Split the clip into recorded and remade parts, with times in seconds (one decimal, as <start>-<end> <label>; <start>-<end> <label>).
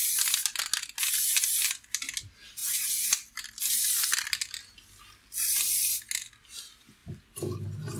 0.0-8.0 recorded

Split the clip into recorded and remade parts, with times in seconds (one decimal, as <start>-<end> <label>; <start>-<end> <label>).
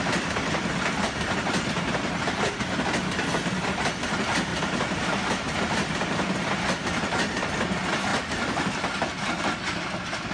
0.0-4.5 recorded; 4.5-5.6 remade; 5.6-10.3 recorded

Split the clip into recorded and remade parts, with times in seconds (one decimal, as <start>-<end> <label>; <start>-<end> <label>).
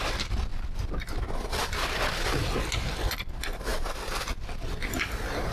0.0-3.7 recorded; 3.7-4.3 remade; 4.3-5.5 recorded